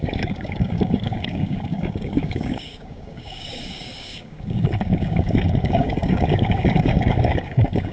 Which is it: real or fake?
fake